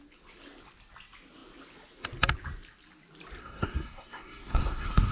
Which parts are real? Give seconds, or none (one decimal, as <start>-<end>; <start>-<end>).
0.0-3.4

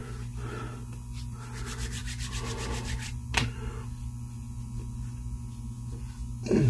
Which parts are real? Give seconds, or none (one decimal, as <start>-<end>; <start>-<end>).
0.0-6.7

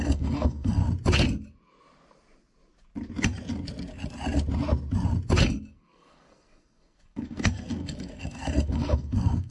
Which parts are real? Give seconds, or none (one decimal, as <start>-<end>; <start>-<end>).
0.8-5.4

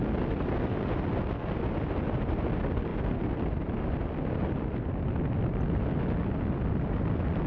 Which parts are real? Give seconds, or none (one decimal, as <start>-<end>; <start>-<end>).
0.0-7.5